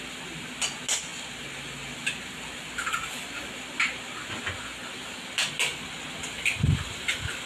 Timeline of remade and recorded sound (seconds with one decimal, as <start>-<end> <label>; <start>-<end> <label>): 0.0-7.5 recorded